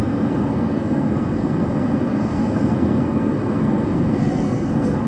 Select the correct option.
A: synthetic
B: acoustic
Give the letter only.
A